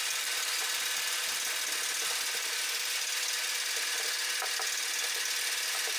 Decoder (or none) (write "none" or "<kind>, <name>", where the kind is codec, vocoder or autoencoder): none